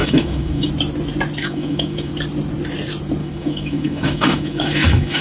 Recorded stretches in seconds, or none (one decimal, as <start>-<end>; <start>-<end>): 0.7-1.4; 2.1-3.2